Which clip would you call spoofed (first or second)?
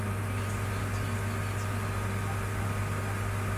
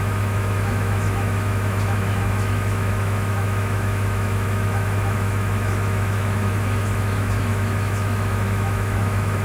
second